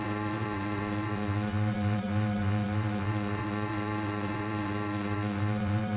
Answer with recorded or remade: remade